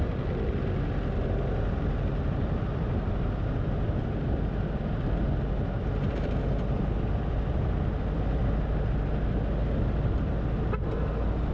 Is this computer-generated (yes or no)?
no